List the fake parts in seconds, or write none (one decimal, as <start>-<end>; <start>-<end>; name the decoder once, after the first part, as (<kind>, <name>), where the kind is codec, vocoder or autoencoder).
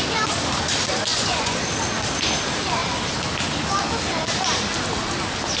1.1-1.6 (vocoder, Vocos)